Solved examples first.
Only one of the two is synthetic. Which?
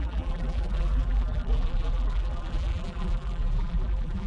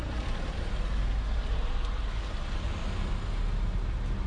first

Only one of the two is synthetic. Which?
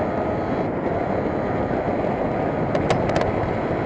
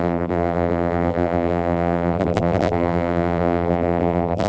second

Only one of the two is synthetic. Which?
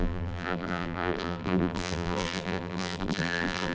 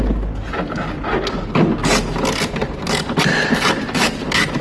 first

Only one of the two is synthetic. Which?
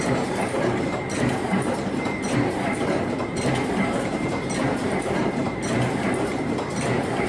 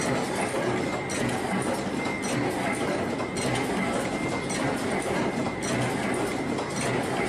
first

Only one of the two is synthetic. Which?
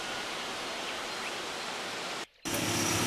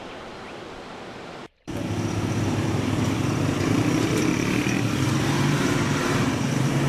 second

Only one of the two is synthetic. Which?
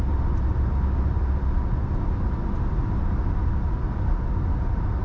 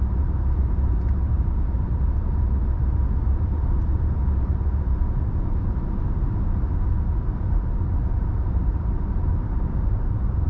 second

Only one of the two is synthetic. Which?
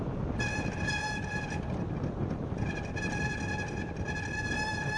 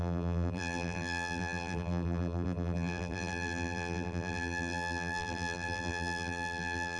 second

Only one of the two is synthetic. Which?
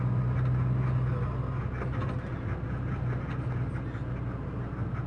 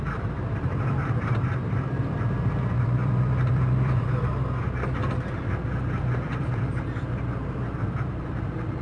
second